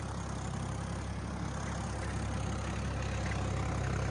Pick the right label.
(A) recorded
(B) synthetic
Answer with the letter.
A